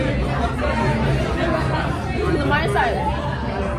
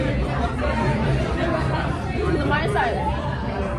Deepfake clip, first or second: second